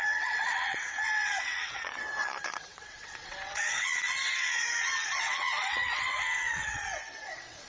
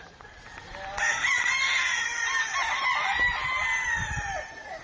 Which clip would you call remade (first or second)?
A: first